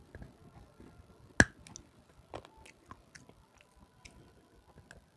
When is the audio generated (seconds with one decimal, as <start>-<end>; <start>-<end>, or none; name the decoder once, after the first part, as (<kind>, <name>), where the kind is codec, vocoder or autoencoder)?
none